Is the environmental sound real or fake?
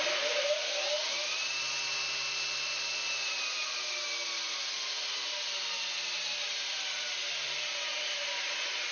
real